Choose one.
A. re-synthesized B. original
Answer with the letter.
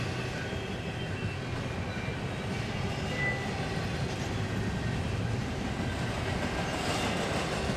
B